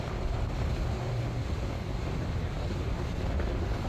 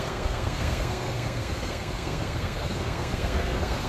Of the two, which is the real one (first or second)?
first